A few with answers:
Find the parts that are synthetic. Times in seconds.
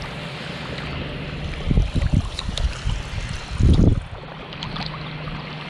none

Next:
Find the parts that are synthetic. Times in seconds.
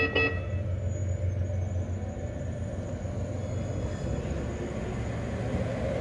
3.4-4.2 (codec, DAC)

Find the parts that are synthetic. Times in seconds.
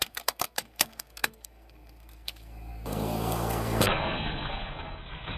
0.0-5.4 (codec, SNAC)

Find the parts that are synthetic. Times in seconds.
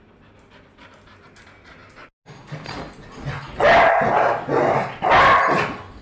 none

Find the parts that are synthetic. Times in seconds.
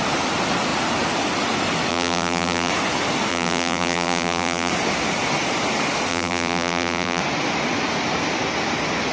1.9-2.7 (vocoder, BigVGAN v2); 3.3-4.7; 6.1-7.2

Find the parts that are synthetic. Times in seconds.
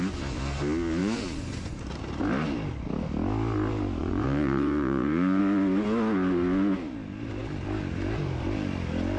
1.0-1.8 (vocoder, Vocos); 4.0-5.4